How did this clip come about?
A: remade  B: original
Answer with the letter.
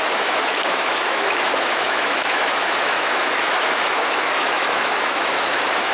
A